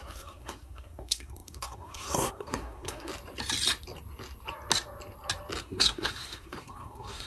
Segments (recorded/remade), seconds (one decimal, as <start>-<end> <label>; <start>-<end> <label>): 0.0-3.1 remade; 3.1-5.6 recorded; 5.6-7.3 remade